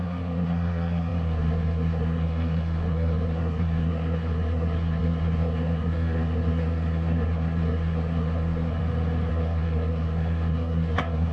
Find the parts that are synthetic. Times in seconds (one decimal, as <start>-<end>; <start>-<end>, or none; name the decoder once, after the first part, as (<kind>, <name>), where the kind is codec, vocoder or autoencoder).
0.0-8.8 (codec, SNAC); 9.3-11.3